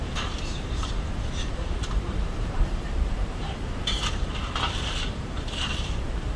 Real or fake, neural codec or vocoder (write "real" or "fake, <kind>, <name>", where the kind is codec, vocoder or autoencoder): fake, vocoder, BigVGAN v2